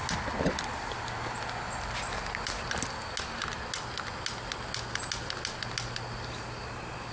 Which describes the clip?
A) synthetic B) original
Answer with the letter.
B